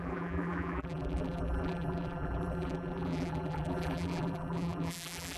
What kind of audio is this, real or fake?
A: fake